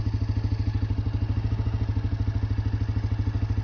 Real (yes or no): yes